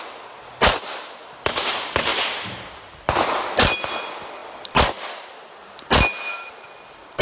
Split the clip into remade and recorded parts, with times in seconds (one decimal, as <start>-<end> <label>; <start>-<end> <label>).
0.0-7.2 recorded